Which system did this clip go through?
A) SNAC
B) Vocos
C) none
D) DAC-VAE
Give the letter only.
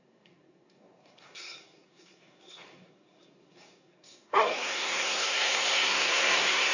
A